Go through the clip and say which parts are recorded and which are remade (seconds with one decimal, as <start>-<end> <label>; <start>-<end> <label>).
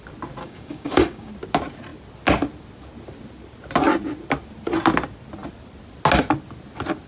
0.0-0.4 recorded; 0.4-1.3 remade; 1.3-7.1 recorded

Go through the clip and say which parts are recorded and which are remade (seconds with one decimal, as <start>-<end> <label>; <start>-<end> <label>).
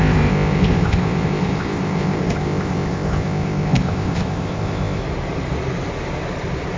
0.0-5.0 remade; 5.0-6.8 recorded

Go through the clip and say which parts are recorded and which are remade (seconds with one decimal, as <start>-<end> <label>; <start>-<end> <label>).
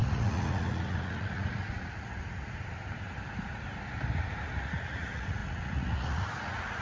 0.0-2.2 remade; 2.2-4.6 recorded; 4.6-6.8 remade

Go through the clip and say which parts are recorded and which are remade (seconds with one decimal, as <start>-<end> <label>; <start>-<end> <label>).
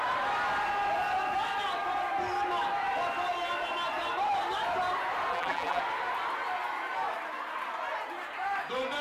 0.0-5.3 recorded; 5.3-5.8 remade; 5.8-9.0 recorded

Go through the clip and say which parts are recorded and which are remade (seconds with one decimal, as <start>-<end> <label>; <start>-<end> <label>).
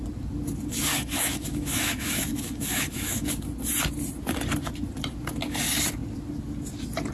0.0-0.9 recorded; 0.9-3.4 remade; 3.4-7.1 recorded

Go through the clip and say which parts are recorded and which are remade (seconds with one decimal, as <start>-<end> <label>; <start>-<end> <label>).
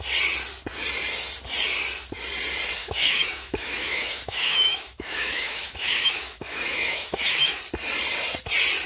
0.0-2.8 recorded; 2.8-7.6 remade; 7.6-8.9 recorded